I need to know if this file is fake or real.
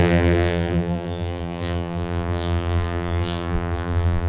fake